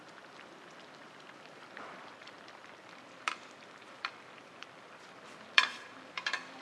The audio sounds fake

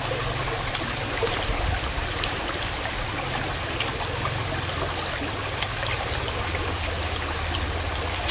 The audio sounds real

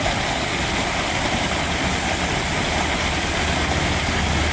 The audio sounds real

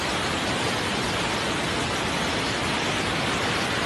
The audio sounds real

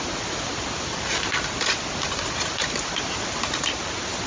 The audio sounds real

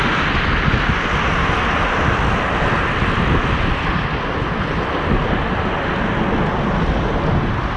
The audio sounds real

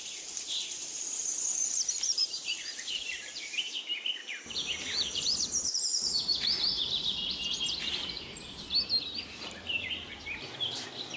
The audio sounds fake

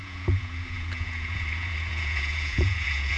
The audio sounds fake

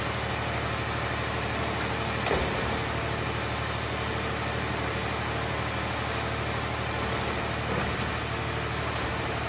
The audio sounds real